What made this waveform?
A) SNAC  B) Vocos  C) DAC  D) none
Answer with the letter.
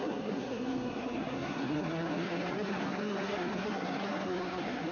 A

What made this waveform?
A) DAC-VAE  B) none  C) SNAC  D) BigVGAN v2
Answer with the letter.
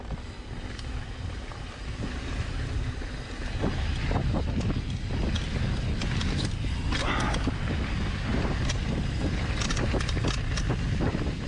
B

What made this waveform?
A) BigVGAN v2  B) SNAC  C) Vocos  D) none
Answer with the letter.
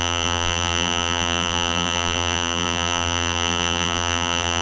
A